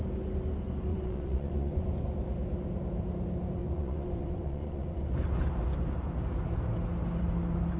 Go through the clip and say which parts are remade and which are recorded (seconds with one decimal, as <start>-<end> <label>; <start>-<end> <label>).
0.0-0.9 recorded; 0.9-1.9 remade; 1.9-3.6 recorded; 3.6-5.1 remade; 5.1-7.8 recorded